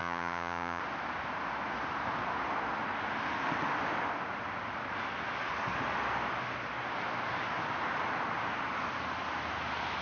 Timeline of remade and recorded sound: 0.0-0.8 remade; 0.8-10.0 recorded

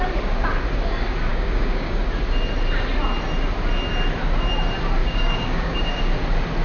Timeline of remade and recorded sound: 0.0-1.3 recorded; 1.3-2.0 remade; 2.0-5.0 recorded; 5.0-6.1 remade; 6.1-6.6 recorded

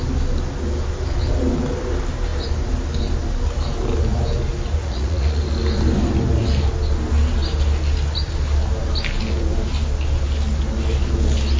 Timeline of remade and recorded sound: 0.0-4.8 recorded; 4.8-5.4 remade; 5.4-11.6 recorded

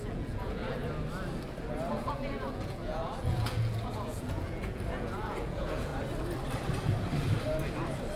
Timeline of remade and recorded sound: 0.0-0.8 remade; 0.8-1.9 recorded; 1.9-5.9 remade; 5.9-8.2 recorded